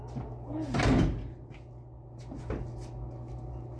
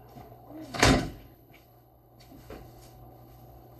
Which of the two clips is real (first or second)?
first